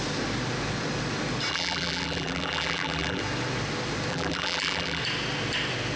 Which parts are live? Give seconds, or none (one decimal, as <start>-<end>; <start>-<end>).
0.0-1.5; 3.2-4.1; 5.0-6.0